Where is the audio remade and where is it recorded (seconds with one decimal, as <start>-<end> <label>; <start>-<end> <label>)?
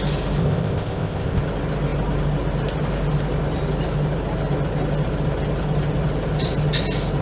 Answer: 0.0-0.4 recorded; 0.4-1.4 remade; 1.4-7.2 recorded